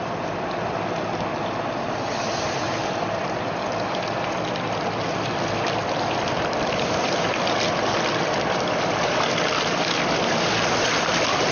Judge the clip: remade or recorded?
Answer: remade